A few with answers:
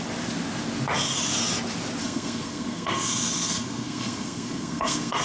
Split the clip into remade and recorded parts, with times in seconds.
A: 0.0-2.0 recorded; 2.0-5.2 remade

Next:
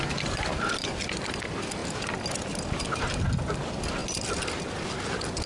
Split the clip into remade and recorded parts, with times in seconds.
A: 0.0-5.5 recorded

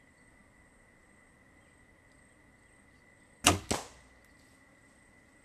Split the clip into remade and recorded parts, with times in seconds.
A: 0.0-5.4 recorded

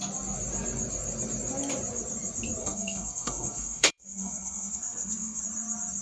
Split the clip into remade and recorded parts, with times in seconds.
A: 0.0-2.6 recorded; 2.6-5.4 remade; 5.4-6.0 recorded

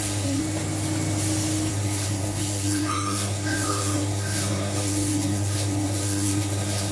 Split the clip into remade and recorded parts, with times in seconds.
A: 0.0-0.4 remade; 0.4-1.7 recorded; 1.7-6.9 remade